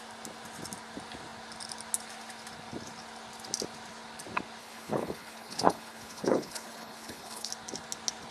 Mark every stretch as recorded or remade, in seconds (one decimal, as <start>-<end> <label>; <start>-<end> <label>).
0.0-4.6 recorded; 4.6-7.5 remade; 7.5-8.3 recorded